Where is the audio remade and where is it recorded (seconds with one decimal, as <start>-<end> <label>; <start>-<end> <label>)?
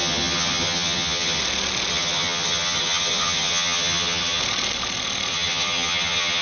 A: 0.0-1.4 remade; 1.4-1.9 recorded; 1.9-4.4 remade; 4.4-5.3 recorded; 5.3-6.4 remade